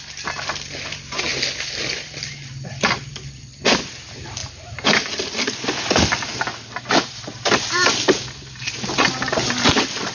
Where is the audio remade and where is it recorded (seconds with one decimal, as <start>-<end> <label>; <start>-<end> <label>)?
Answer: 0.0-10.1 recorded